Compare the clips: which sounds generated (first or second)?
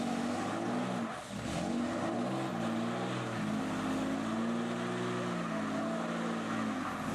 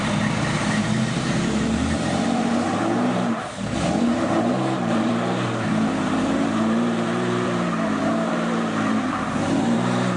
second